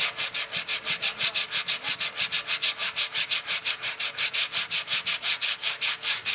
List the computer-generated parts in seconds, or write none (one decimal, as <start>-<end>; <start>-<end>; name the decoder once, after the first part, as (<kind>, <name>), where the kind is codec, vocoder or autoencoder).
2.8-6.3 (vocoder, BigVGAN v2)